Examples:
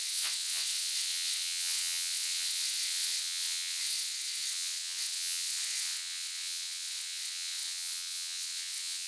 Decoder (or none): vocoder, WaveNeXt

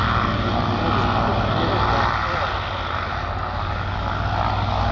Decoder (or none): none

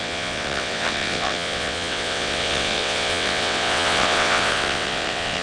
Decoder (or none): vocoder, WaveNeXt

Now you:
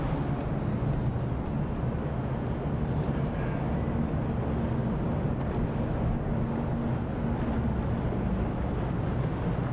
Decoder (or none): none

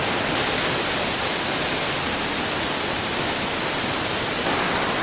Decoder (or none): none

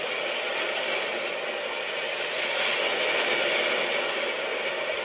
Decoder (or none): none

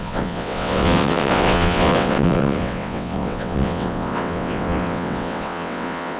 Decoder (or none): vocoder, WaveNeXt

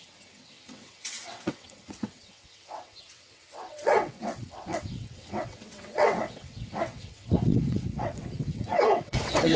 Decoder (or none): vocoder, WaveNeXt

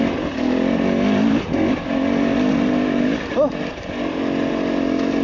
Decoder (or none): none